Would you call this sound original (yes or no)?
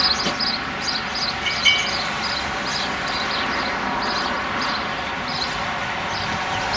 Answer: yes